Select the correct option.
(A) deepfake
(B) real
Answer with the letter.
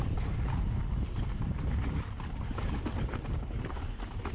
B